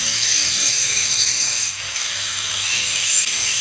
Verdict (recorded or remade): remade